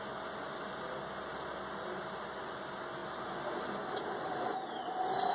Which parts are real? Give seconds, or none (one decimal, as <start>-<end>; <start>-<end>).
0.0-5.3